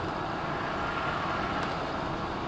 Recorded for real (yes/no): yes